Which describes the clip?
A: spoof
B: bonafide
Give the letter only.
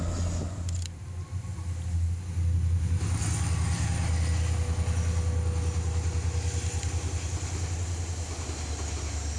B